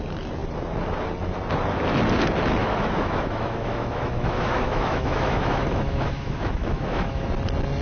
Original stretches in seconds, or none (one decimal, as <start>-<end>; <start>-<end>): 0.0-2.6; 7.3-7.8

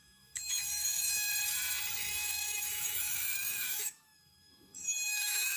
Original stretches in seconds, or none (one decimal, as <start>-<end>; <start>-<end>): 1.3-2.0

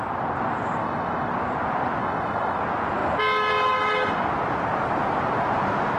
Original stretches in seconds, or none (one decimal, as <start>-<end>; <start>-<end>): 0.0-0.8; 1.3-2.0; 2.6-6.0